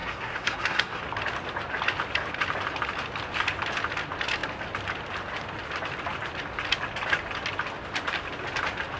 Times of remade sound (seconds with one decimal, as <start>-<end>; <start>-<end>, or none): 0.0-1.0